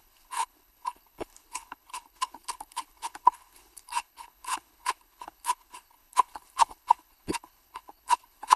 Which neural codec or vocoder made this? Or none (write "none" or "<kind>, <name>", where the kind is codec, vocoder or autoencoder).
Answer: codec, HILCodec